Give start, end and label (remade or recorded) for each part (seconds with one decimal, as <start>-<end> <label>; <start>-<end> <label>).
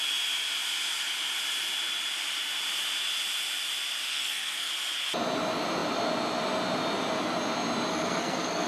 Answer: 0.0-4.1 recorded; 4.1-4.7 remade; 4.7-7.9 recorded; 7.9-8.7 remade